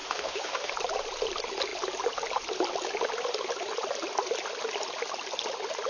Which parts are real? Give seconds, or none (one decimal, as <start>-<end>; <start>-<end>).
0.7-5.9